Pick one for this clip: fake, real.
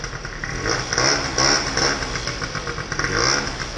real